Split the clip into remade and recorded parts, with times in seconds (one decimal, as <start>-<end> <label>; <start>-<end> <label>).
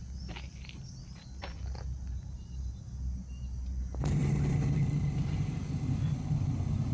0.0-6.9 recorded